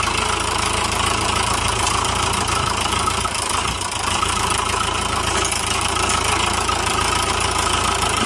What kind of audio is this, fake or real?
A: fake